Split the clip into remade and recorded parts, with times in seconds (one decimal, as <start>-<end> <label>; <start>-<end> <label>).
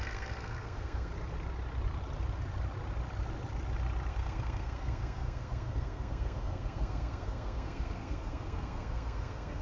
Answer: 0.0-1.1 remade; 1.1-4.1 recorded; 4.1-9.6 remade